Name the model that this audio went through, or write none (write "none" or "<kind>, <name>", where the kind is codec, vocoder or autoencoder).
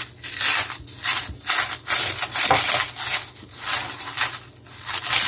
none